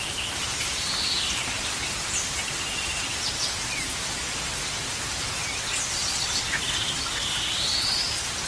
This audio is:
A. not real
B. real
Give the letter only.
B